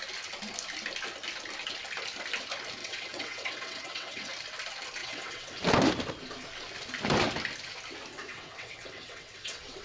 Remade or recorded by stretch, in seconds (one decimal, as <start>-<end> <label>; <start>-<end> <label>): 0.0-2.8 recorded; 2.8-4.3 remade; 4.3-5.0 recorded; 5.0-5.6 remade; 5.6-8.1 recorded; 8.1-9.8 remade